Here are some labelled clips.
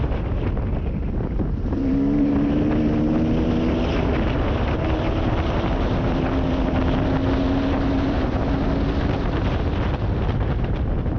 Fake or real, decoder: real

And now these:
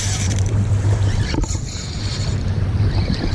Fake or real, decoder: fake, vocoder, BigVGAN v2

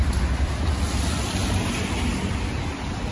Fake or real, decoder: real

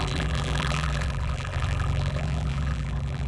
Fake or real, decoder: fake, vocoder, BigVGAN v2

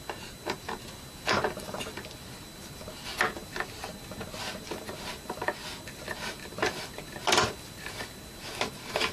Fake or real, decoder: real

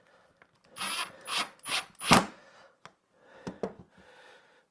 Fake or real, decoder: real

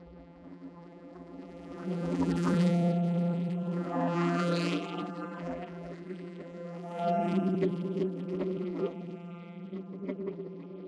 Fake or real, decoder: fake, vocoder, BigVGAN v2